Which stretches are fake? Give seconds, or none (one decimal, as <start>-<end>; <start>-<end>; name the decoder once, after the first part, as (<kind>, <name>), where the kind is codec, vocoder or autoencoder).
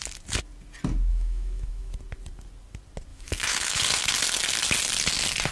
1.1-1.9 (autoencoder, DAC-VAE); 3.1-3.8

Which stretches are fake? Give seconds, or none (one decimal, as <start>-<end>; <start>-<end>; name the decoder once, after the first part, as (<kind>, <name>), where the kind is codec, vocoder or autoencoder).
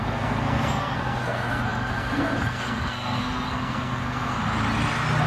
0.0-4.4 (codec, SNAC)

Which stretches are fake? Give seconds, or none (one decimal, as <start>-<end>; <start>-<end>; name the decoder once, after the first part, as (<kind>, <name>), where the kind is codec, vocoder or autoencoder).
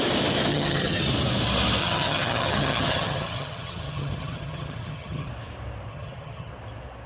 0.5-1.0 (vocoder, HiFi-GAN); 1.8-5.3; 5.9-6.5